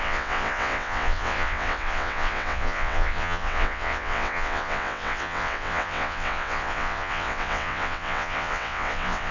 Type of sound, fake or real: fake